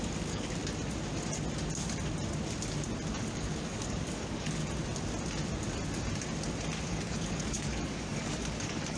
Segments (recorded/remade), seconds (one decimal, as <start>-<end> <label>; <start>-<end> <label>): 0.0-0.6 remade; 0.6-3.2 recorded; 3.2-4.6 remade; 4.6-6.9 recorded; 6.9-9.0 remade

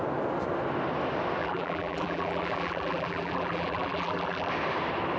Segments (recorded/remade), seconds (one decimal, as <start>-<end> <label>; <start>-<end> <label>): 0.0-1.4 recorded; 1.4-4.5 remade; 4.5-5.2 recorded

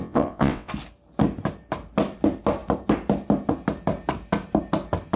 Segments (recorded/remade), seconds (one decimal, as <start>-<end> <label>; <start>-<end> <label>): 0.0-0.7 remade; 0.7-5.2 recorded

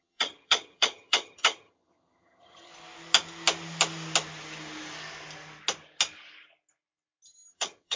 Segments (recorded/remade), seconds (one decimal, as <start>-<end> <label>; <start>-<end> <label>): 0.0-2.7 remade; 2.7-7.5 recorded; 7.5-8.0 remade